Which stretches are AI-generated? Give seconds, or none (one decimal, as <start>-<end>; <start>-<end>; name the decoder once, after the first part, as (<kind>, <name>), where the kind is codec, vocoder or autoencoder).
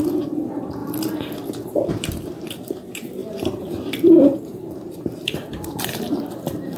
0.0-0.8 (vocoder, BigVGAN v2); 1.9-6.8